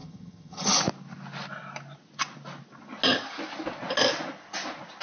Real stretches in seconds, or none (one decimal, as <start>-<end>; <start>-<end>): 0.8-5.0